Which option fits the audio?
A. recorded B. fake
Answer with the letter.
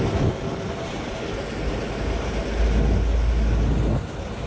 A